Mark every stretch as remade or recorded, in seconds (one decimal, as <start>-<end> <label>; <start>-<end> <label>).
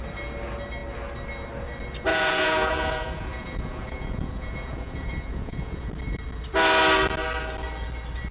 0.0-2.1 recorded; 2.1-5.9 remade; 5.9-8.3 recorded